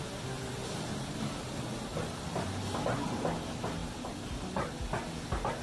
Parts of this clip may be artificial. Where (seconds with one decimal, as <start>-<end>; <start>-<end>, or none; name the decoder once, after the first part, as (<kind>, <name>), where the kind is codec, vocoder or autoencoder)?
1.9-2.8 (vocoder, BigVGAN v2)